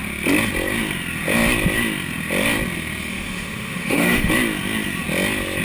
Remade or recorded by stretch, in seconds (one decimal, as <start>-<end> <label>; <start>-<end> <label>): 0.0-3.1 recorded; 3.1-4.3 remade; 4.3-5.6 recorded